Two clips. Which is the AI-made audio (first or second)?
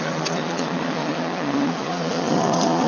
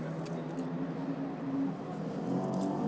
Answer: first